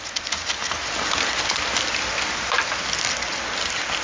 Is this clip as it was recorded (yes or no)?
yes